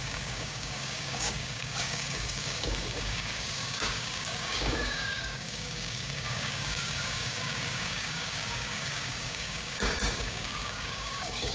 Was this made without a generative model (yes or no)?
no